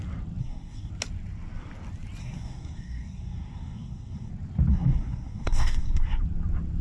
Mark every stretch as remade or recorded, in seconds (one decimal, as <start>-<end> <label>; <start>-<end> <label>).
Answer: 0.0-0.4 recorded; 0.4-0.9 remade; 0.9-2.2 recorded; 2.2-4.3 remade; 4.3-4.7 recorded; 4.7-6.2 remade; 6.2-6.8 recorded